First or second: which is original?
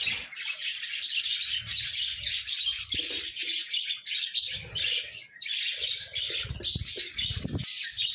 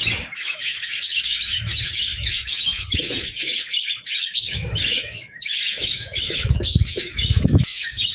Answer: first